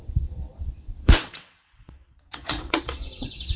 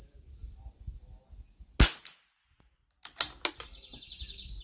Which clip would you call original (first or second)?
second